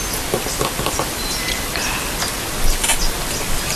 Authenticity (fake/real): real